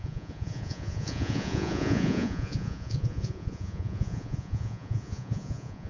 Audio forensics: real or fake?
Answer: fake